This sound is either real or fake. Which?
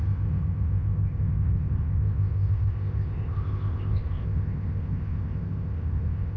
fake